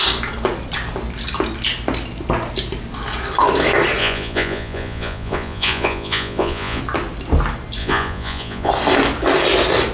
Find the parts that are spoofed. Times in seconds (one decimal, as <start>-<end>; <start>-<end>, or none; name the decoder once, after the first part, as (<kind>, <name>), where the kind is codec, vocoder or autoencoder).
4.0-6.8 (vocoder, Vocos); 7.8-8.7